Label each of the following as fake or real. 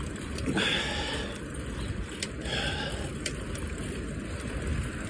real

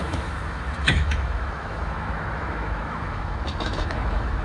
fake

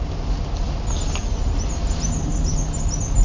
real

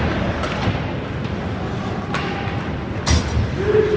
real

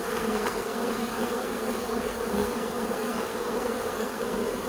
fake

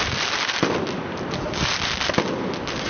fake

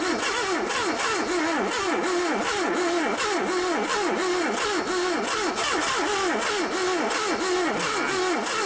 real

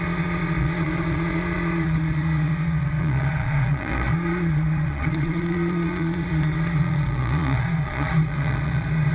fake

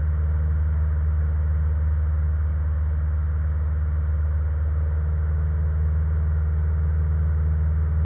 real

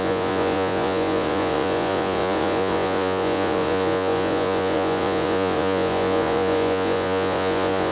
fake